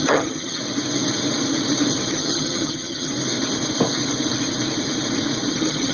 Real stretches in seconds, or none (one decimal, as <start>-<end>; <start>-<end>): 0.6-2.1; 3.1-5.5